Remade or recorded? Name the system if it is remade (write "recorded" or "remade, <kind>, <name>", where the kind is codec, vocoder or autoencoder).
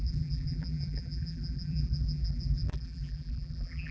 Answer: remade, vocoder, BigVGAN v2